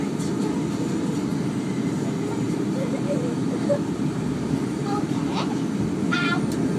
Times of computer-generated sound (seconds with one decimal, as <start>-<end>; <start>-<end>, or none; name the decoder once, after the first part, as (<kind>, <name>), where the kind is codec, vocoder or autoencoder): 1.3-5.2 (vocoder, BigVGAN v2)